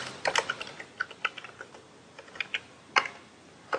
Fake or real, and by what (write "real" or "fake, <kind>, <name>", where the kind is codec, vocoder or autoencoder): real